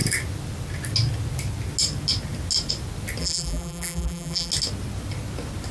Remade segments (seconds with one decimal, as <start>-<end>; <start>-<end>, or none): 3.2-4.5